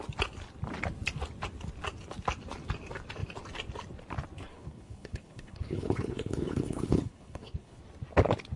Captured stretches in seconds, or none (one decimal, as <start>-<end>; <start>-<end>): 0.0-4.5; 7.8-8.6